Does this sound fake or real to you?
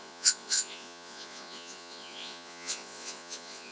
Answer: fake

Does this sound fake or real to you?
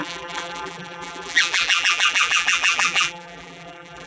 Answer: fake